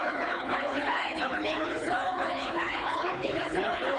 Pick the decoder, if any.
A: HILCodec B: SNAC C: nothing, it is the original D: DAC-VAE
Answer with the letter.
A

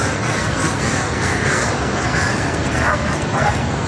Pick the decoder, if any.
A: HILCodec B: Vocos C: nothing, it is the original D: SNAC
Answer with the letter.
D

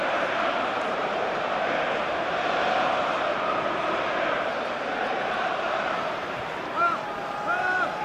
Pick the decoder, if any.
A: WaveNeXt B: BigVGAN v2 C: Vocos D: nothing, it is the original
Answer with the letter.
B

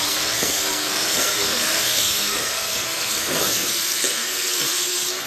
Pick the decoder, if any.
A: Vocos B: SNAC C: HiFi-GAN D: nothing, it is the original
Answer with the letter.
B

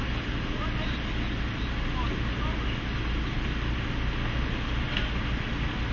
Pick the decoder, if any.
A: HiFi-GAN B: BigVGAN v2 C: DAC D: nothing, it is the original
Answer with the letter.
D